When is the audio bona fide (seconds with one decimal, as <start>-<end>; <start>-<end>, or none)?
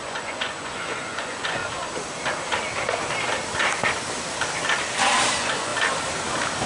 1.6-5.3; 5.7-6.7